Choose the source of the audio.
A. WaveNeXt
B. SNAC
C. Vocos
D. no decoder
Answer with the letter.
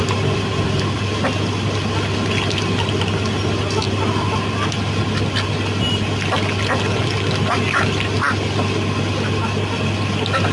D